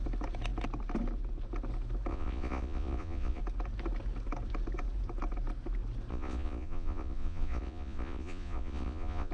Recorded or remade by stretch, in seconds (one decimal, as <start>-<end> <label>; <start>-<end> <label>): 0.0-2.1 recorded; 2.1-3.4 remade; 3.4-6.1 recorded; 6.1-9.3 remade